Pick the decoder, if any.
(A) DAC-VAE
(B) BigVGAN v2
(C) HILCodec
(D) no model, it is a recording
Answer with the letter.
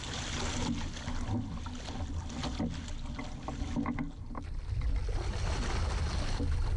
D